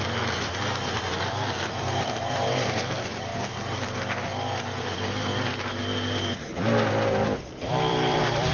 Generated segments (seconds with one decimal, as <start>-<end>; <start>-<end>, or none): 1.7-3.3; 6.9-8.5